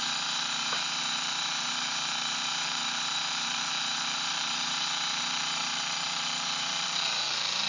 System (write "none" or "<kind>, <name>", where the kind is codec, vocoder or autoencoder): vocoder, BigVGAN v2